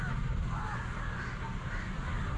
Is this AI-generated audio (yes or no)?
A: no